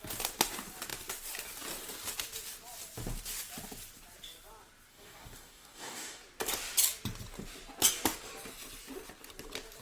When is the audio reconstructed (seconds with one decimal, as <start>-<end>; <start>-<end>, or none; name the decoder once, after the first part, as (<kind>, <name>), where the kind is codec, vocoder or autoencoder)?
4.9-6.2 (codec, DAC)